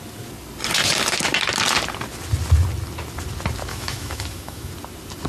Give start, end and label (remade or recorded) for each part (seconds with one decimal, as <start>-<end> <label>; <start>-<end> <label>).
0.0-3.7 recorded; 3.7-4.7 remade; 4.7-5.3 recorded

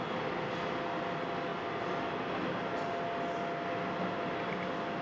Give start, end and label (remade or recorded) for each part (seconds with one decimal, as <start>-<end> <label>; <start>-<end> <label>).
0.0-5.0 recorded

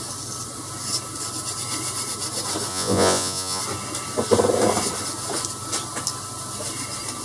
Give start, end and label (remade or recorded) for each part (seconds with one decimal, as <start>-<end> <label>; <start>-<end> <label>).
0.0-2.7 recorded; 2.7-3.6 remade; 3.6-7.2 recorded

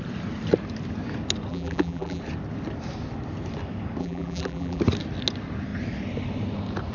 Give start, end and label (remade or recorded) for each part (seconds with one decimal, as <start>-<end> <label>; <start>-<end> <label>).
0.0-1.5 recorded; 1.5-2.2 remade; 2.2-4.0 recorded; 4.0-4.8 remade; 4.8-6.9 recorded

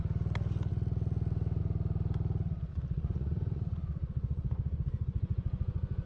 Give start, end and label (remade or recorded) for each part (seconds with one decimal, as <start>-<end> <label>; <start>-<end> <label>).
0.0-2.7 recorded; 2.7-6.1 remade

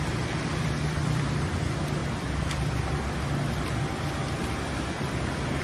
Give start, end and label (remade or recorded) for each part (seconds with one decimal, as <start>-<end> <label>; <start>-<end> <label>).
0.0-2.0 remade; 2.0-5.6 recorded

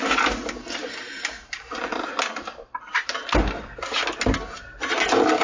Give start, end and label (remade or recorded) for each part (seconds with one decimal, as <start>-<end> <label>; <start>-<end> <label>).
0.0-0.8 recorded; 0.8-4.0 remade; 4.0-5.4 recorded